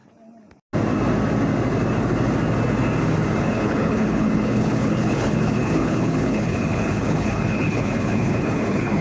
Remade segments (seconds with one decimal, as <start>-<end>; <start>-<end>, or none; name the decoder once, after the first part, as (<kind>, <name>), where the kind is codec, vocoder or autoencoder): 3.4-9.0 (codec, HILCodec)